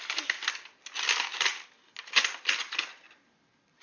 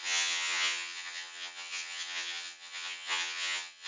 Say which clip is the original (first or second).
first